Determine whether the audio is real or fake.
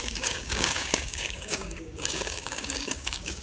fake